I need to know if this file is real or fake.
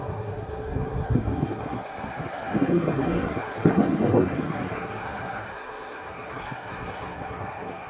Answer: fake